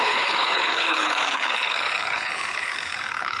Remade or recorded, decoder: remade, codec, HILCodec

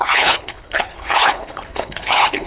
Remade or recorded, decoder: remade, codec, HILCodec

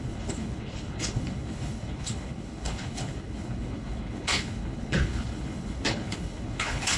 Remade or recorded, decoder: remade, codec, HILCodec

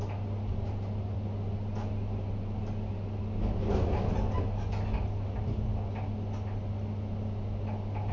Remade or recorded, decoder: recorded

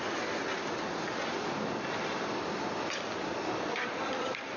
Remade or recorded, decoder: recorded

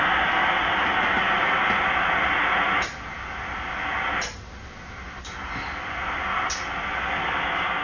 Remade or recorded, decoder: recorded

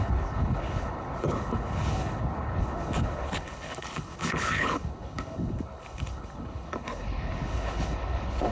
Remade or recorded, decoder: remade, codec, HILCodec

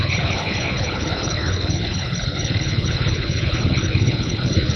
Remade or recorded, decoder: remade, codec, HILCodec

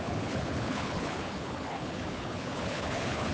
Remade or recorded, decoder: remade, codec, HILCodec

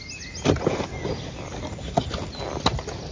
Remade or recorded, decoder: recorded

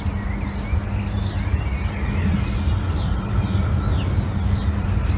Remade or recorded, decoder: recorded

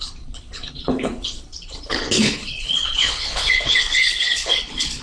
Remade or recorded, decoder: remade, codec, HILCodec